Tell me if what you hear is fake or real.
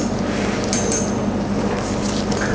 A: real